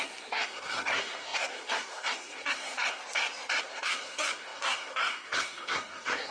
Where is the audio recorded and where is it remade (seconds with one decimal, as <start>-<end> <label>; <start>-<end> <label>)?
0.0-3.0 remade; 3.0-3.6 recorded; 3.6-6.3 remade